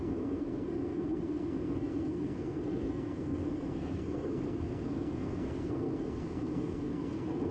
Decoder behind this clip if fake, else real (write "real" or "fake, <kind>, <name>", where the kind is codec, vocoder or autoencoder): fake, codec, SNAC